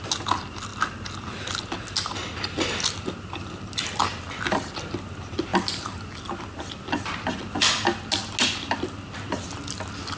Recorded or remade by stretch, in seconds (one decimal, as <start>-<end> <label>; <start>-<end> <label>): 0.0-10.2 recorded